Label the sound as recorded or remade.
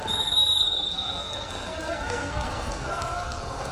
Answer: remade